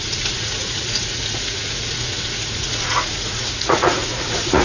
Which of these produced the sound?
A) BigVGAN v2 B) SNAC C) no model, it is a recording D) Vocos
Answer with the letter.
D